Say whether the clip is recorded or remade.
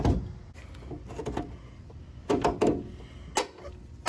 recorded